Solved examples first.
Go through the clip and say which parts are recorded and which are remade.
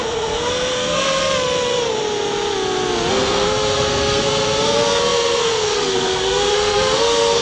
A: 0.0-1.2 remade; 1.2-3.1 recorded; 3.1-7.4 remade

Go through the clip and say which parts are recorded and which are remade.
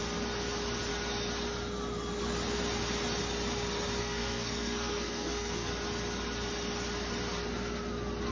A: 0.0-4.0 recorded; 4.0-5.7 remade; 5.7-8.3 recorded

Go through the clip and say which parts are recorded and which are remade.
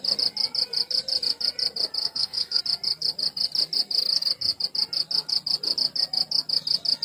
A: 0.0-2.0 recorded; 2.0-2.6 remade; 2.6-7.0 recorded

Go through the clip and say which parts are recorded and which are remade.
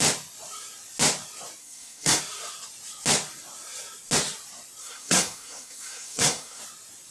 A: 0.0-1.6 recorded; 1.6-2.2 remade; 2.2-4.8 recorded; 4.8-6.6 remade; 6.6-7.1 recorded